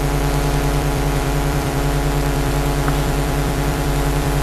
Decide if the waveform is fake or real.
fake